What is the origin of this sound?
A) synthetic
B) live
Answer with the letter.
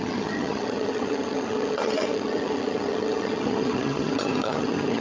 A